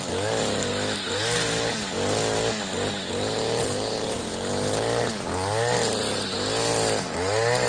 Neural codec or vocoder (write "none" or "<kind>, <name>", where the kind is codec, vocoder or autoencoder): none